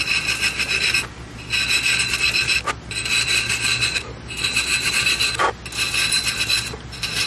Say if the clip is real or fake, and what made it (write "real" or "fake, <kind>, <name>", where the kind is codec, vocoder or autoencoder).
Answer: real